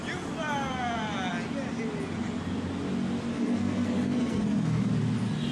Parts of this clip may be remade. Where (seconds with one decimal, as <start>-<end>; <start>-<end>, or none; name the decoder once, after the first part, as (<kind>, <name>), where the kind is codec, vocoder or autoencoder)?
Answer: 3.3-4.8 (codec, SNAC)